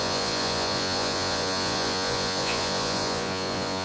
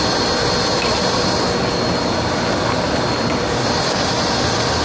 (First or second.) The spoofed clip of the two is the first